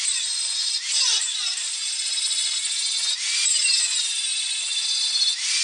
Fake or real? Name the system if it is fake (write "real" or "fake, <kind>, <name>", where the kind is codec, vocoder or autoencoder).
real